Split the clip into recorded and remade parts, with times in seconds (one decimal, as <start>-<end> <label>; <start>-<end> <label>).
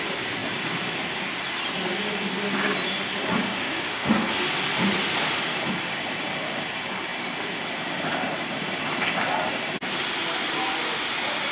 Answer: 0.0-3.6 recorded; 3.6-4.1 remade; 4.1-11.5 recorded